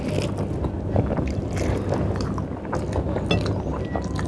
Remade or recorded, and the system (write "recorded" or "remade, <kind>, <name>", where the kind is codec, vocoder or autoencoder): recorded